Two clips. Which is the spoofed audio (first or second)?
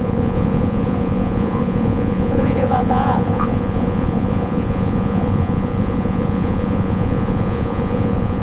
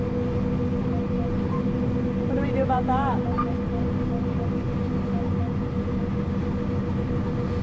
first